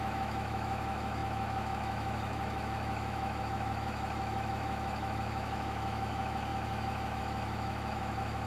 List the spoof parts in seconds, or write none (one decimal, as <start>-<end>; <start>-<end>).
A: 0.0-8.5